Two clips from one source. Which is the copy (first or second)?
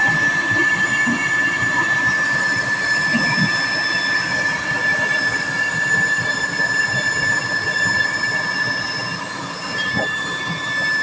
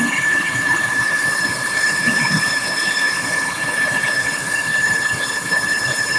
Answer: second